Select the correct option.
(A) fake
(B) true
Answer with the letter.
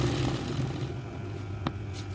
B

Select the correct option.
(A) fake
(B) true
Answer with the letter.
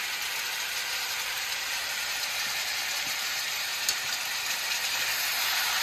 A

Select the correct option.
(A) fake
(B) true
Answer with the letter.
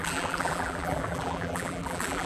A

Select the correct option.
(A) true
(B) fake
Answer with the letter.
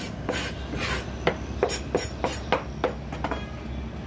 A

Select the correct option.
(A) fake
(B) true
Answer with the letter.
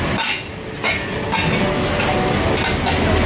B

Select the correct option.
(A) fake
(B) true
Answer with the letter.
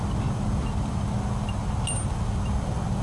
B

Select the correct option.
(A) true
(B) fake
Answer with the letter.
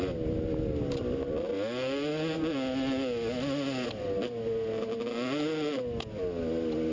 A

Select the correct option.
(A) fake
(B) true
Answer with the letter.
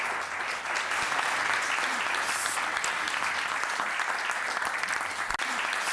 B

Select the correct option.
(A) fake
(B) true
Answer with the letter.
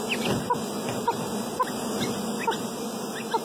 B